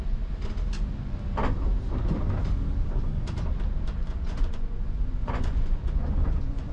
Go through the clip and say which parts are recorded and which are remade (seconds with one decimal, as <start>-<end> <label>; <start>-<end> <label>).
0.0-4.0 recorded; 4.0-6.7 remade